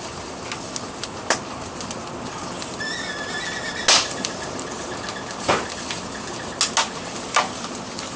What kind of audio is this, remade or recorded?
recorded